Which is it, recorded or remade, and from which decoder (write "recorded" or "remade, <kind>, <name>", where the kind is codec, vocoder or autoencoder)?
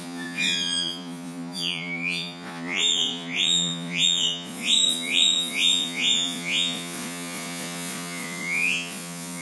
remade, vocoder, Vocos